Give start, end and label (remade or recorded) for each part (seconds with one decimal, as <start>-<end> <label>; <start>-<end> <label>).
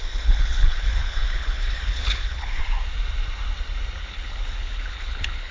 0.0-2.6 remade; 2.6-4.0 recorded; 4.0-5.5 remade